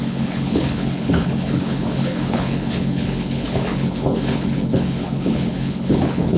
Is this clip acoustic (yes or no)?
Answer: no